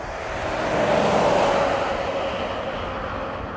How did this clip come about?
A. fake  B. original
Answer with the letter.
B